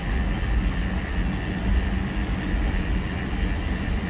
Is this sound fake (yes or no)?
no